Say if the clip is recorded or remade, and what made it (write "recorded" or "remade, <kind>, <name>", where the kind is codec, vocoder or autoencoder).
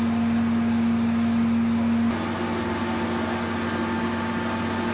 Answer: recorded